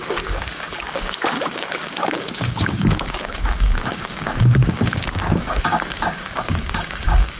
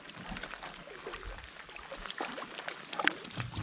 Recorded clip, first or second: second